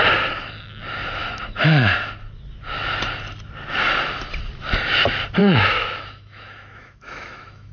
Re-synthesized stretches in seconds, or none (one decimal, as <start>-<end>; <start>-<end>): 1.2-1.9; 5.4-7.7

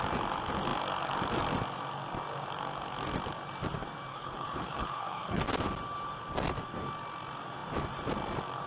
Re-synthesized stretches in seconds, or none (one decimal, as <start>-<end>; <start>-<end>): 4.1-5.4

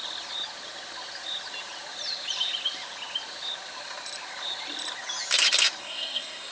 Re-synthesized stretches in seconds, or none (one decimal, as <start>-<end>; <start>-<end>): 5.8-6.5

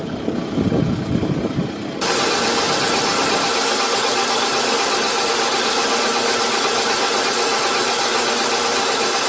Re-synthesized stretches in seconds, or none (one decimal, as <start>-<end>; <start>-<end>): none